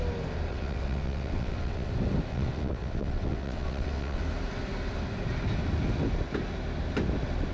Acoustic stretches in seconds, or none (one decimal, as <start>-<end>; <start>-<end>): 0.0-0.5; 1.9-2.3; 4.2-7.5